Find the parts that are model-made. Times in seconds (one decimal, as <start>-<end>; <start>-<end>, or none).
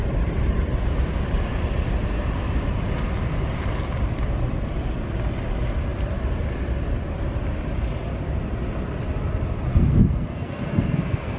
9.7-11.4